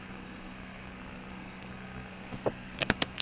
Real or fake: fake